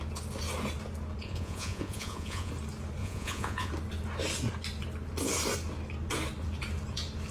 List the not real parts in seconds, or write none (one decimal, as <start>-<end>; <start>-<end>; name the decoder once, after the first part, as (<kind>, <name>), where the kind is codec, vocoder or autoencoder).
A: 1.2-2.5 (vocoder, Vocos); 3.0-3.7